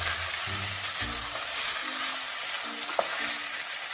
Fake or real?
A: real